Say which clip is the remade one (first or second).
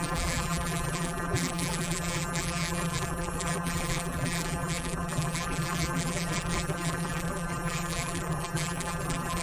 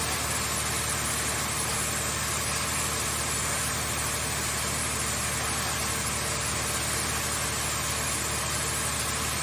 first